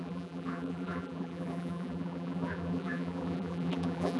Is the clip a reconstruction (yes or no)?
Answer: yes